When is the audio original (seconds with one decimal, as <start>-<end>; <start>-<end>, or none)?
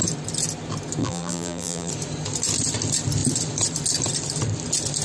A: 0.0-1.0; 1.9-5.0